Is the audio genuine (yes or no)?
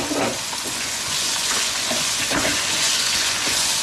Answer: no